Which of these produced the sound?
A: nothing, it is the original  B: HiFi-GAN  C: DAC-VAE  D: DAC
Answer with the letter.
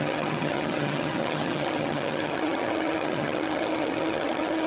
B